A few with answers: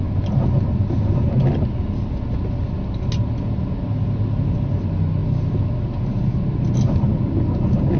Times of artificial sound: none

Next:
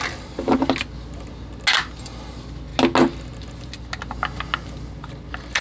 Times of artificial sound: none

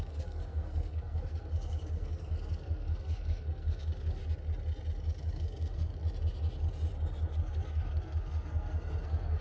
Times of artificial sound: 0.0-4.2 (codec, SNAC); 5.3-5.9; 7.3-9.4